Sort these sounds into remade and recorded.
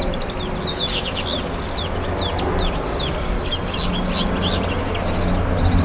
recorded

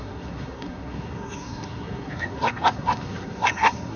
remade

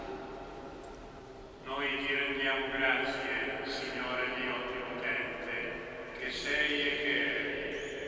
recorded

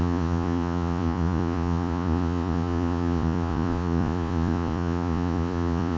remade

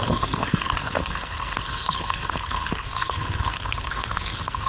remade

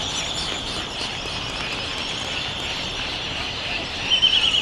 remade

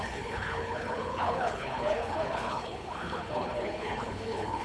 remade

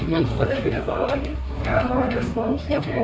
remade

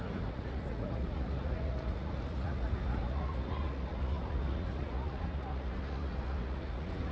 remade